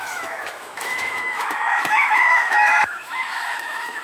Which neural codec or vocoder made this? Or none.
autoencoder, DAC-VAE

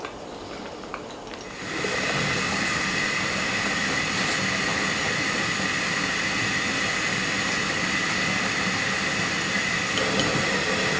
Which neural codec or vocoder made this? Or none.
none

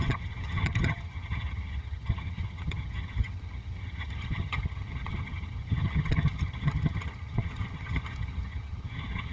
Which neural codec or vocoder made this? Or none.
vocoder, HiFi-GAN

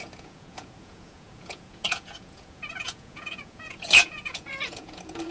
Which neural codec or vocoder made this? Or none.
vocoder, Vocos